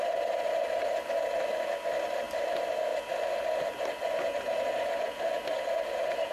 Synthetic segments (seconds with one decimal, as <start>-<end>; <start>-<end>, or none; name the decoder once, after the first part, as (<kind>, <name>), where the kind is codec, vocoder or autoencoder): none